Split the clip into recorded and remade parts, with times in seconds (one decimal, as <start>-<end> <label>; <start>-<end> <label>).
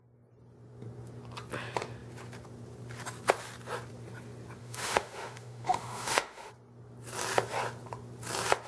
0.0-4.6 recorded; 4.6-6.5 remade; 6.5-8.7 recorded